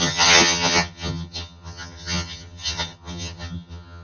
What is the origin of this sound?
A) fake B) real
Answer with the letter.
A